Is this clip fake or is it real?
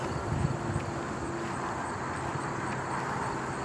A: real